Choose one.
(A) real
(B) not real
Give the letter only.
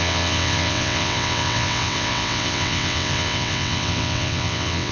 B